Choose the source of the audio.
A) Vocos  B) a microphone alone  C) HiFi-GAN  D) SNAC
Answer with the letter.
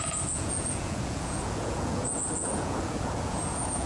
A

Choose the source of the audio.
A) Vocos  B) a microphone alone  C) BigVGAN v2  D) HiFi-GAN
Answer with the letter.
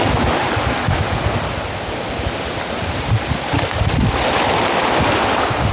B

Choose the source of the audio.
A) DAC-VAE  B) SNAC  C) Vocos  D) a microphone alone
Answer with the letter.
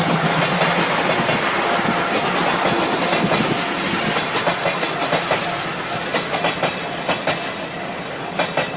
D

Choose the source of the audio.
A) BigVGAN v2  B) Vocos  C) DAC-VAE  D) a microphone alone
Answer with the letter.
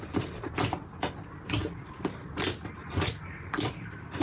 D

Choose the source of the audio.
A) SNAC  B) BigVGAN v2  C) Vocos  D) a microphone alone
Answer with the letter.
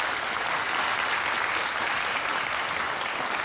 D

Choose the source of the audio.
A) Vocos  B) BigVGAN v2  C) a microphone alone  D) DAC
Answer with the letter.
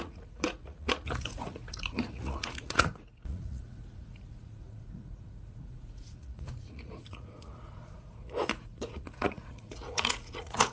A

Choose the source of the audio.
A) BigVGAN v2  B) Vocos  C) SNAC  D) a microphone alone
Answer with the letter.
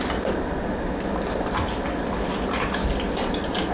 D